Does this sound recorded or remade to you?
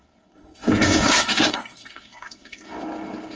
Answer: remade